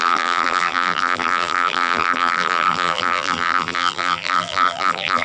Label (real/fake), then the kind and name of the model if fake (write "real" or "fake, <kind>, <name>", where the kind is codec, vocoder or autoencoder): fake, vocoder, BigVGAN v2